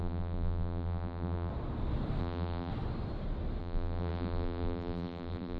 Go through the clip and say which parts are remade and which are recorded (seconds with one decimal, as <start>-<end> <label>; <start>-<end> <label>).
0.0-1.5 remade; 1.5-2.2 recorded; 2.2-2.7 remade; 2.7-3.6 recorded; 3.6-5.6 remade